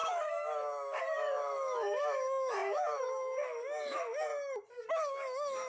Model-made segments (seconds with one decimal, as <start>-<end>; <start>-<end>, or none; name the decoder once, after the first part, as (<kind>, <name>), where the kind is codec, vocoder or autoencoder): 0.0-4.3 (autoencoder, DAC-VAE); 4.9-5.7